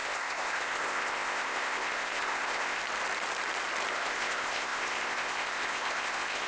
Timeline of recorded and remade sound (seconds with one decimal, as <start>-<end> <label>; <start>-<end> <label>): 0.0-2.8 remade; 2.8-3.9 recorded; 3.9-6.5 remade

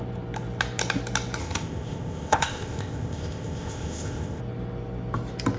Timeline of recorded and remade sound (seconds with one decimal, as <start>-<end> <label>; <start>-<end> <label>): 0.0-1.4 recorded; 1.4-4.4 remade; 4.4-5.6 recorded

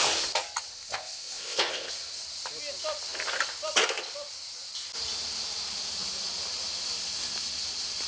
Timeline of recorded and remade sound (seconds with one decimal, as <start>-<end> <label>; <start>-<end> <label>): 0.0-0.7 recorded; 0.7-1.9 remade; 1.9-8.1 recorded

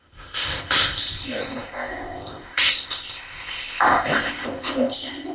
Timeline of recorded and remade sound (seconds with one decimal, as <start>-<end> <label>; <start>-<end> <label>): 0.0-5.3 remade

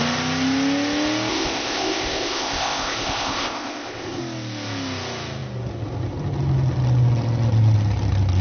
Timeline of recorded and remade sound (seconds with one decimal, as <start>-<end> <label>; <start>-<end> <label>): 0.0-1.3 recorded; 1.3-4.2 remade; 4.2-8.4 recorded

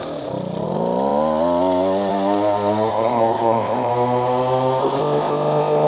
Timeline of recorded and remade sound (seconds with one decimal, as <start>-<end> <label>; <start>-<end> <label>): 0.0-2.9 recorded; 2.9-3.9 remade; 3.9-4.8 recorded; 4.8-5.9 remade

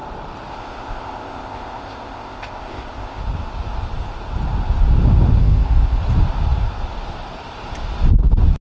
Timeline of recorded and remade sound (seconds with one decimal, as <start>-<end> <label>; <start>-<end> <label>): 0.0-0.5 recorded; 0.5-3.2 remade; 3.2-5.4 recorded; 5.4-6.0 remade; 6.0-8.6 recorded

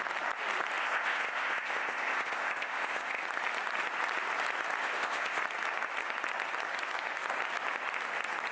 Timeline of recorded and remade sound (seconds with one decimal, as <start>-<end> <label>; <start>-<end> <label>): 0.0-0.8 recorded; 0.8-3.2 remade; 3.2-4.8 recorded; 4.8-5.4 remade; 5.4-8.5 recorded